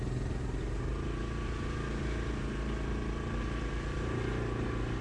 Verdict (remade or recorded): recorded